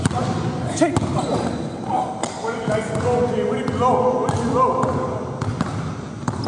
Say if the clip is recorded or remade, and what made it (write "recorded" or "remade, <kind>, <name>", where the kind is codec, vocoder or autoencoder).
recorded